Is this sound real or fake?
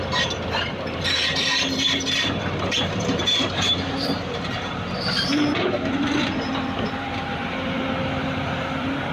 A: fake